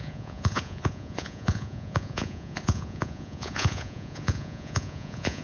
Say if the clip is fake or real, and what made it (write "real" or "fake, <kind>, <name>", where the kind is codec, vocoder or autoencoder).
fake, vocoder, Vocos